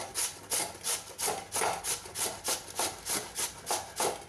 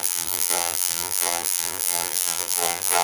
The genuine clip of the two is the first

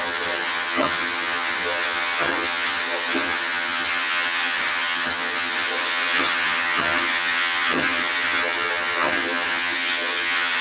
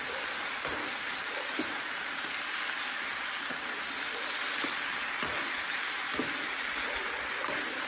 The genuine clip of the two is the second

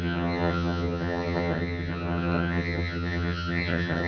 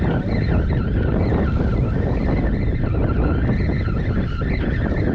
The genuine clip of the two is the second